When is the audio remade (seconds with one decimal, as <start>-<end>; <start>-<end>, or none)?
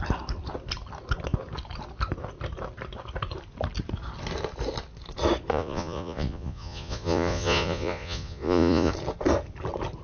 5.5-8.9